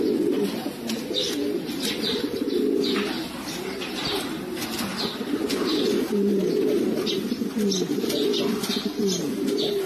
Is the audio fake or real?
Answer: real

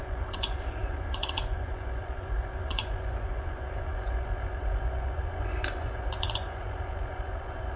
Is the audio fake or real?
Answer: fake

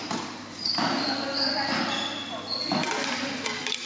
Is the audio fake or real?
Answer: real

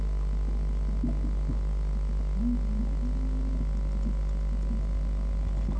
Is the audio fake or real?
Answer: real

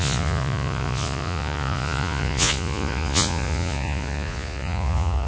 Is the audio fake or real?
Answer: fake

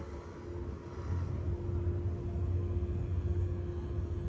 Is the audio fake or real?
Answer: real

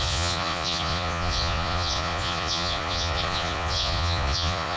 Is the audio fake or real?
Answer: fake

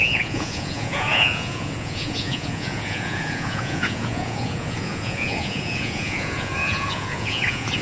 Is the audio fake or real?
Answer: fake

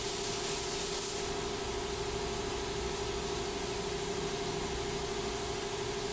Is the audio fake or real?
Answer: real